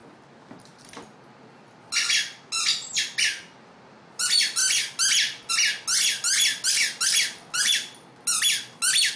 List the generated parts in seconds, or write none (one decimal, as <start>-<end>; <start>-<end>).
none

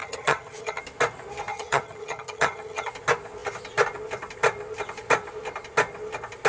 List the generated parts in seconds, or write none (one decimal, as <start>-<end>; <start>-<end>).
0.0-0.8; 1.5-2.9

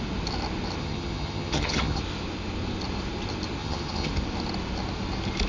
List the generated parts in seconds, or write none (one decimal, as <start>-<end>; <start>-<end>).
0.8-2.0; 3.6-4.1

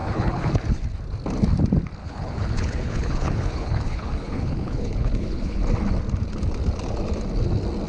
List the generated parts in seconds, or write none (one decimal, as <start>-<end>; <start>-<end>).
0.0-0.5; 2.0-5.6

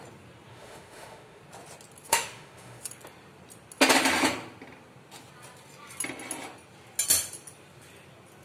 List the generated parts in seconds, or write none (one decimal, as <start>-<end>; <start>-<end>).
0.5-1.4; 2.1-2.8

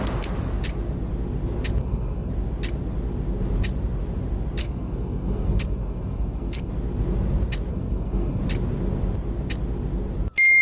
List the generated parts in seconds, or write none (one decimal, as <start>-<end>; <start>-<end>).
1.8-2.3; 4.6-6.7; 7.7-8.4

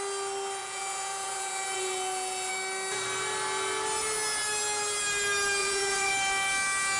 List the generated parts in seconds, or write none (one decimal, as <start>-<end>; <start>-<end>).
0.6-2.5; 5.6-6.1